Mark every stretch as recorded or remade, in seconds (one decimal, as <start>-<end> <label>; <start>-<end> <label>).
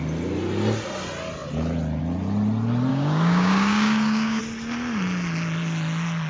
0.0-2.9 recorded; 2.9-4.4 remade; 4.4-6.3 recorded